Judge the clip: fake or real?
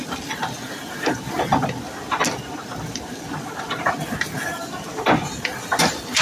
real